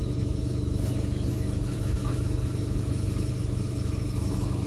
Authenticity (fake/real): fake